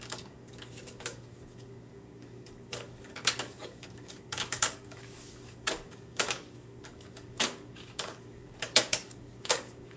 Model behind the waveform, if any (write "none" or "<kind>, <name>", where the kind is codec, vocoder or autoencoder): codec, DAC